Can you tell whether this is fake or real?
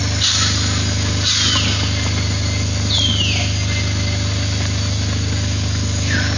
real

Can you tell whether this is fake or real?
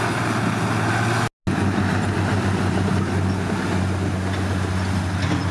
real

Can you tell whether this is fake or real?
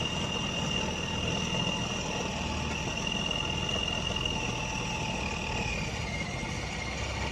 real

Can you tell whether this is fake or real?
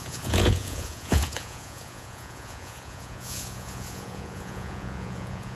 fake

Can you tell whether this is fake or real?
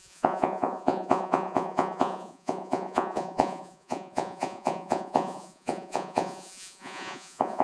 fake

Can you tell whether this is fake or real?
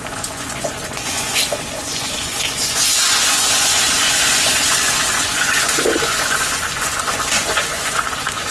fake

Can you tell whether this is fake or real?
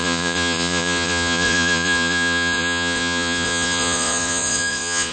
fake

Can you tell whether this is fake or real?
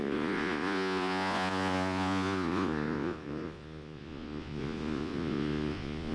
fake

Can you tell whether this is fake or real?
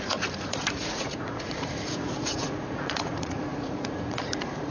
fake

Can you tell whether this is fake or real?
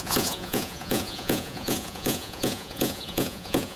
fake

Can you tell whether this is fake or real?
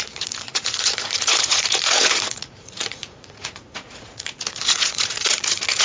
fake